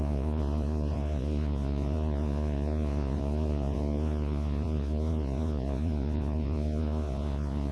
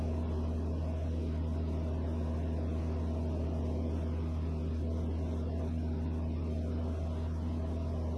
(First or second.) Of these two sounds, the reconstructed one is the first